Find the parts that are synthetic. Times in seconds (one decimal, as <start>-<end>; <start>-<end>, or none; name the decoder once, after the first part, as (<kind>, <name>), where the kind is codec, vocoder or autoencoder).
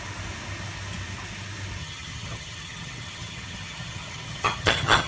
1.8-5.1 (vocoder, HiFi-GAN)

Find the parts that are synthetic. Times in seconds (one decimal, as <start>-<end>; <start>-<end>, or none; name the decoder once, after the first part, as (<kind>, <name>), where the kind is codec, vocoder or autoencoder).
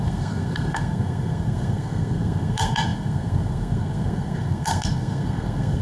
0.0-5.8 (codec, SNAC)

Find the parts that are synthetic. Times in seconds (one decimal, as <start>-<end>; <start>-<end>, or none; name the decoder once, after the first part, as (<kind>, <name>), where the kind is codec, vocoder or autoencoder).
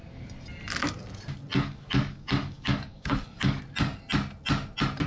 1.5-3.6 (codec, DAC)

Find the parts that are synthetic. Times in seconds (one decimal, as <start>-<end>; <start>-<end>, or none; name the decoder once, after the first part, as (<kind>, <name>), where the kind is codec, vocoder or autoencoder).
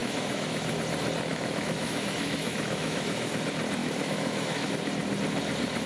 0.0-0.7 (autoencoder, DAC-VAE); 1.3-3.3; 3.8-4.7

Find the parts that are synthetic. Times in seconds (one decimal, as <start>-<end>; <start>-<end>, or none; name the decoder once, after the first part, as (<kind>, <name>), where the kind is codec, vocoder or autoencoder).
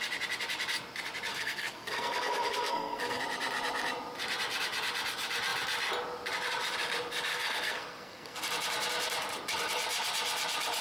1.3-3.2 (codec, SNAC); 7.3-8.4